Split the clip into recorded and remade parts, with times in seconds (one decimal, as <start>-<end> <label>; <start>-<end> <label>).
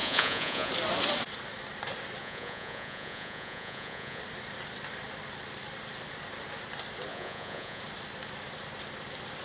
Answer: 0.0-0.7 remade; 0.7-2.2 recorded; 2.2-4.2 remade; 4.2-7.1 recorded; 7.1-7.8 remade; 7.8-9.4 recorded